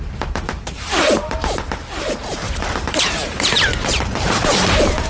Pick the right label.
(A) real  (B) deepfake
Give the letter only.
B